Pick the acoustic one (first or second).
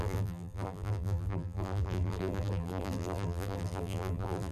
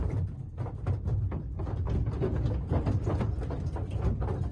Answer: second